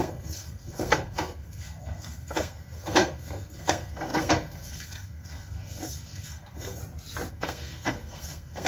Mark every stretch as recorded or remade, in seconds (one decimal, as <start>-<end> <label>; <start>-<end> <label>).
0.0-6.8 remade; 6.8-7.3 recorded; 7.3-8.7 remade